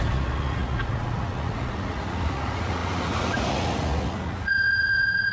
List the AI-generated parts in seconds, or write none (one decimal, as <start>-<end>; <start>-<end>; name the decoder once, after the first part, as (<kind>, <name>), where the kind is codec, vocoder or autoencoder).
0.0-5.3 (vocoder, Vocos)